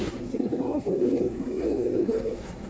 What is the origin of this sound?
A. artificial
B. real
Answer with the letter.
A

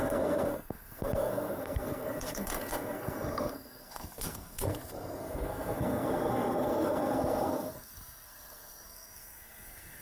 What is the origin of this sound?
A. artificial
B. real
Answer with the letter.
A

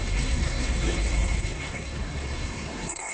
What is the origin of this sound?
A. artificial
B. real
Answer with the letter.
A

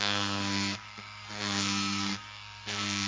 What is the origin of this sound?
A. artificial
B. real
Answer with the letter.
A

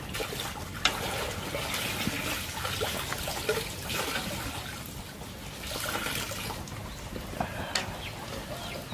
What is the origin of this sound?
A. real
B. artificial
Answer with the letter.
A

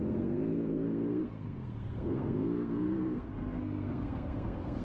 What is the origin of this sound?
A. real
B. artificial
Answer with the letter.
B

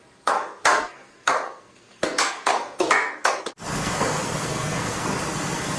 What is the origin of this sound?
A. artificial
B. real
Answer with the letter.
A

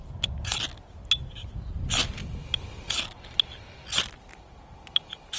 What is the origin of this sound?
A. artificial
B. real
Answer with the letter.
B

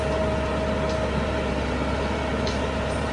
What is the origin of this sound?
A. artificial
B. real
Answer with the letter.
B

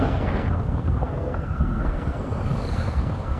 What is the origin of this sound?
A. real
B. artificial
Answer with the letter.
B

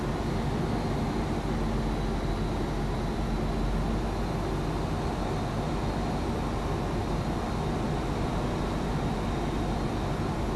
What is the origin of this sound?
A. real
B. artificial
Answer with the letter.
A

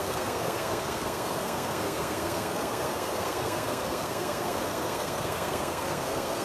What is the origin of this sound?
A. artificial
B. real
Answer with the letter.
A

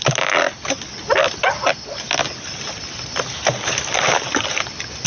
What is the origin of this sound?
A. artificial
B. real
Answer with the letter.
B